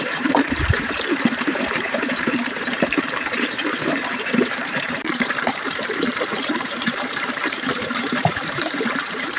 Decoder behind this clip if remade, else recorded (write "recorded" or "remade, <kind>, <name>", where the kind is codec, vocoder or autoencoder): remade, vocoder, BigVGAN v2